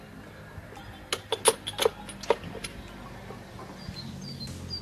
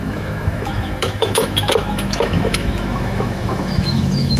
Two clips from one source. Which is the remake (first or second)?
second